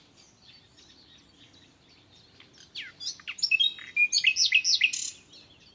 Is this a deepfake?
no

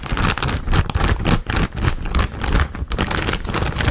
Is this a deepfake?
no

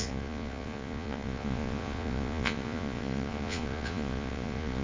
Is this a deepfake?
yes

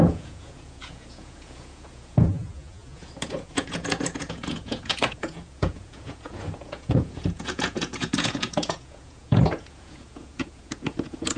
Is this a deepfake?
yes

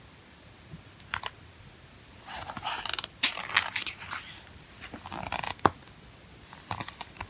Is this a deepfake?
no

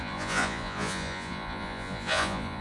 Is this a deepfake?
yes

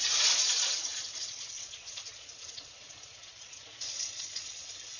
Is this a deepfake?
yes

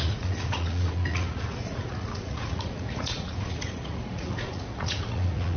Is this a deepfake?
yes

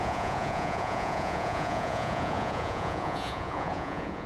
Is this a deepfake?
yes